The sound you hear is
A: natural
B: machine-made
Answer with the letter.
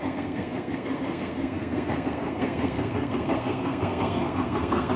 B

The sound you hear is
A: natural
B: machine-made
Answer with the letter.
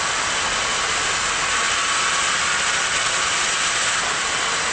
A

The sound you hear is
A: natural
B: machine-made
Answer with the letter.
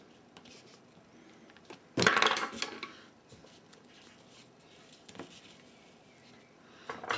A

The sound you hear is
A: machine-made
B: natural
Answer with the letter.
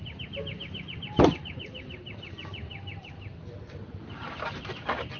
A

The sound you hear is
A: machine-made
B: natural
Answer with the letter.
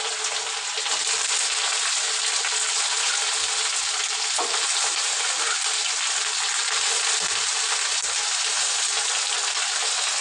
B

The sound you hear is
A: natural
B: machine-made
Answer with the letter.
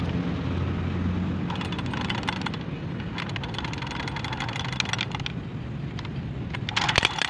A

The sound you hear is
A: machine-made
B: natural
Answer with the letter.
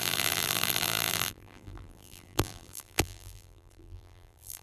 A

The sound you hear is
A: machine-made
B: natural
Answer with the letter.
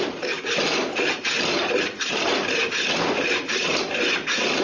B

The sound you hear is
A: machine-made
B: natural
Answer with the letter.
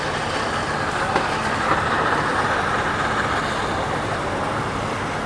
B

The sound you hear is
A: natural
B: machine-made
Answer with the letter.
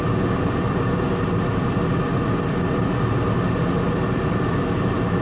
A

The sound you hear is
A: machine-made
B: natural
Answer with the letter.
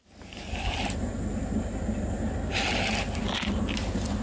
B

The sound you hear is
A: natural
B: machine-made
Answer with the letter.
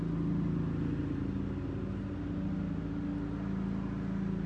A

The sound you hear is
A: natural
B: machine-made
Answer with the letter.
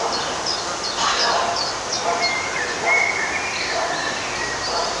A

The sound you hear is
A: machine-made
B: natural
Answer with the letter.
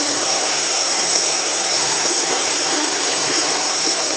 A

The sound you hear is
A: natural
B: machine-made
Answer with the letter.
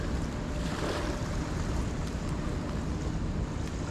A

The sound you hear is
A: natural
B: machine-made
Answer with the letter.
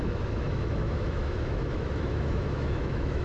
B